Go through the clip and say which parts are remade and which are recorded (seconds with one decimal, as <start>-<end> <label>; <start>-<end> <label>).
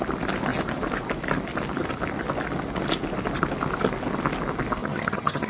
0.0-4.8 recorded; 4.8-5.5 remade